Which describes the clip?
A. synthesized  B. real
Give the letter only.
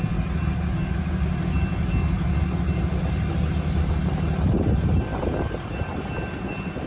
B